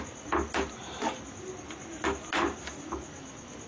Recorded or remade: recorded